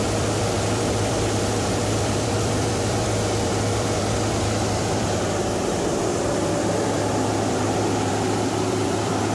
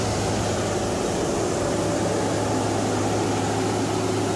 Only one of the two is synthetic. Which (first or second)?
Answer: first